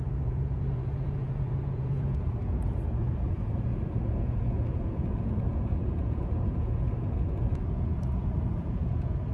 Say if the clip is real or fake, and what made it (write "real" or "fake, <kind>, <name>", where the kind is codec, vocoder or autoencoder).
fake, vocoder, Vocos